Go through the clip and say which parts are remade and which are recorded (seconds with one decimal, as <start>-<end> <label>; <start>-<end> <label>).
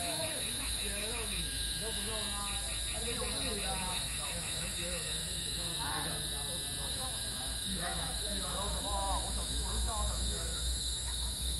0.0-2.1 remade; 2.1-3.9 recorded; 3.9-5.7 remade; 5.7-6.9 recorded; 6.9-11.6 remade